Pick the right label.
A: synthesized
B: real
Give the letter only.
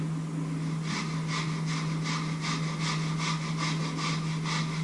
B